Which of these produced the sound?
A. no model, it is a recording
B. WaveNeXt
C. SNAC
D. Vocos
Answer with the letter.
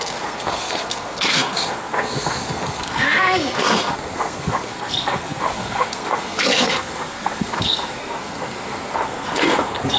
C